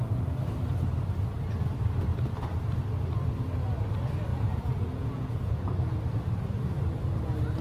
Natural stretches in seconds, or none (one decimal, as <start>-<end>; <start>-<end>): 0.0-4.3; 6.0-7.6